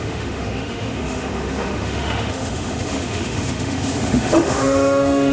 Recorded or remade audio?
remade